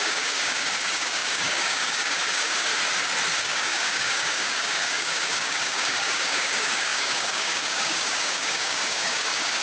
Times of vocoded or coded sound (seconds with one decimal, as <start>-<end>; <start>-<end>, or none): 0.0-2.7; 3.4-9.6